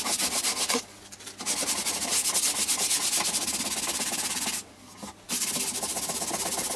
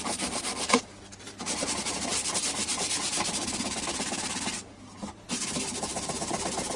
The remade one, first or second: second